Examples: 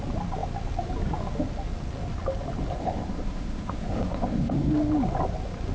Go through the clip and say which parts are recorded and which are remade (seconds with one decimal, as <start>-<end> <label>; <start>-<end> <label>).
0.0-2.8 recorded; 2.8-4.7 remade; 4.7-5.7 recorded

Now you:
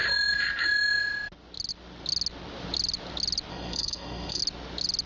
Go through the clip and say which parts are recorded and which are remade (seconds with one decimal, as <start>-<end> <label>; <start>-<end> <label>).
0.0-3.5 recorded; 3.5-4.4 remade; 4.4-5.1 recorded

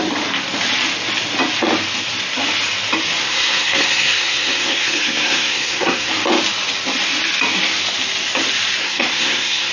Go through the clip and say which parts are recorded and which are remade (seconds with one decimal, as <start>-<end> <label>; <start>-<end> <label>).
0.0-3.2 recorded; 3.2-6.1 remade; 6.1-8.8 recorded; 8.8-9.7 remade

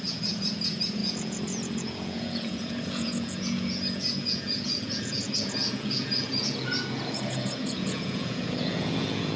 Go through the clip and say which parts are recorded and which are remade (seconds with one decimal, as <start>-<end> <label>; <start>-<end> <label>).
0.0-9.4 remade

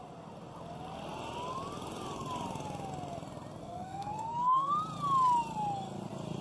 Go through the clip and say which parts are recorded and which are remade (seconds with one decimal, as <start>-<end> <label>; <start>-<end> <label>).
0.0-3.6 recorded; 3.6-4.7 remade; 4.7-6.4 recorded

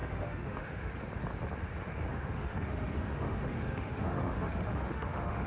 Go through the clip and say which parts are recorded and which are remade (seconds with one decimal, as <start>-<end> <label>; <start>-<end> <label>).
0.0-0.9 remade; 0.9-2.1 recorded; 2.1-5.5 remade